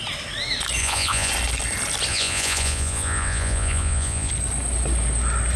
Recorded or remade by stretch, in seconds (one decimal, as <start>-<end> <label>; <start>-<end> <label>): 0.0-0.8 recorded; 0.8-1.3 remade; 1.3-2.1 recorded; 2.1-4.3 remade; 4.3-5.6 recorded